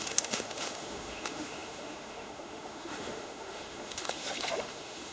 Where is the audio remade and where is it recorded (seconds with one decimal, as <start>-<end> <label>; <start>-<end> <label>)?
0.0-5.1 remade